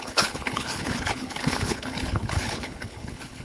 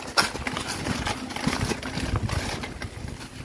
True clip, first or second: second